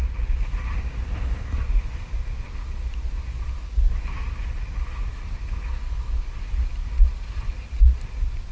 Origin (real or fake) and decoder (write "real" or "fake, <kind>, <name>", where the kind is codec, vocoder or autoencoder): real